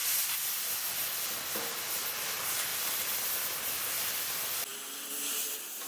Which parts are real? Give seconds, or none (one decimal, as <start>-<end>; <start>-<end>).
0.0-5.9

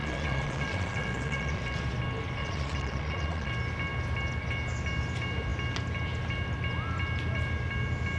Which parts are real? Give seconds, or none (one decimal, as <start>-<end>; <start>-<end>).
1.6-2.4; 3.5-8.2

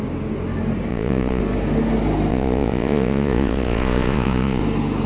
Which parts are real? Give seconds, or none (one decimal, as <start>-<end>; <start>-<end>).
0.0-0.9; 1.4-2.3; 4.6-5.1

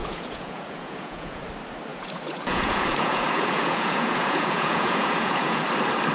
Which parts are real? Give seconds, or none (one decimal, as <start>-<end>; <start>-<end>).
1.4-1.9; 5.6-6.1

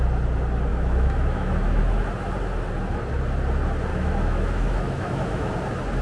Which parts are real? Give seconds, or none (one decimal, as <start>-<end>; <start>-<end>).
0.0-0.7; 1.8-3.9; 5.5-6.0

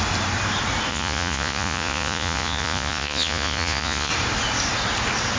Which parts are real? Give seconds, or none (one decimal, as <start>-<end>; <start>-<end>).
0.0-0.9; 4.1-5.4